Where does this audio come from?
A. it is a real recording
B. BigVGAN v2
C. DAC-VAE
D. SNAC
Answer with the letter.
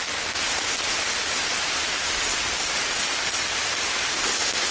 A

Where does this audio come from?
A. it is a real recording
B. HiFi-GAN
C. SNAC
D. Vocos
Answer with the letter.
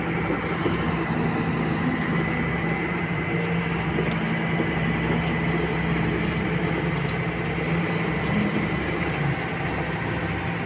A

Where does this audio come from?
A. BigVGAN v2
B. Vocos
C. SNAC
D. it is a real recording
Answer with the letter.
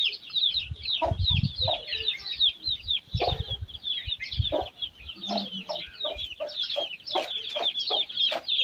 D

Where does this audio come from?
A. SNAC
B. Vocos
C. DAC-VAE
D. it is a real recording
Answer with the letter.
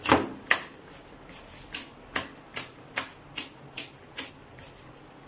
D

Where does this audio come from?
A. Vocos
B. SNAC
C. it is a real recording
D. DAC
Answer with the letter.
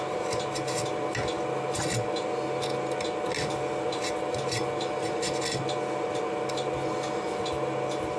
C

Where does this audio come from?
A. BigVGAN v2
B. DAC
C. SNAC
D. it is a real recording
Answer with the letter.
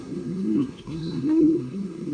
C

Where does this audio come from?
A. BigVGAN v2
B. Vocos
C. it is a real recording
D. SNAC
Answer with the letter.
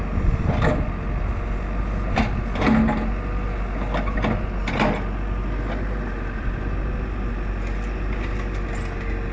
C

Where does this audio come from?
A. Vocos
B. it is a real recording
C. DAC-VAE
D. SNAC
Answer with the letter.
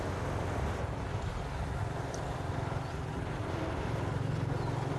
B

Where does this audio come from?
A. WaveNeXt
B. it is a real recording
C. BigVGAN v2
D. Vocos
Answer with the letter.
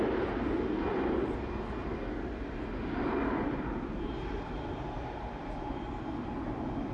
B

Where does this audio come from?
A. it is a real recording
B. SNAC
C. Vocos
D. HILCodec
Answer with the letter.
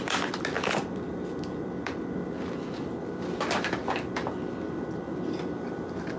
A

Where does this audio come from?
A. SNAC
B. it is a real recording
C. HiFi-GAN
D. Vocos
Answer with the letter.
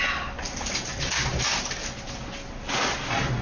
B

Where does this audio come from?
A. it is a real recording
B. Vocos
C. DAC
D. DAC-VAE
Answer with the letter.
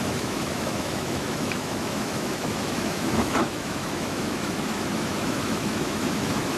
D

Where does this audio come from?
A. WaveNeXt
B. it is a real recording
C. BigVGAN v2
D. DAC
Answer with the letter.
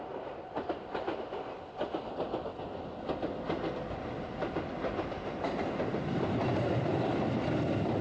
C